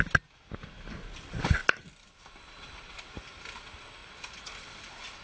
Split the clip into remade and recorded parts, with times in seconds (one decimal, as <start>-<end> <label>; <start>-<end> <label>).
0.0-1.6 recorded; 1.6-3.2 remade; 3.2-5.2 recorded